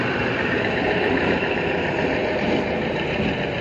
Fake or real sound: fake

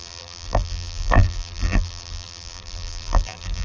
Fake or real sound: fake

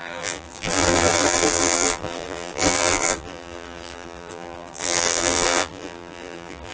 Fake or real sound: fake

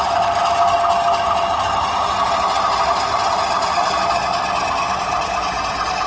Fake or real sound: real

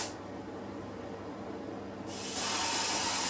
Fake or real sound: real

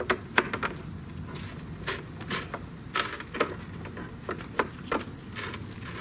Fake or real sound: real